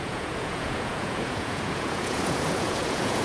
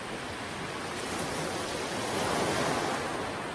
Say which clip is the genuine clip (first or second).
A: second